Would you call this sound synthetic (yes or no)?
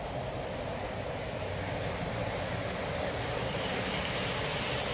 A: no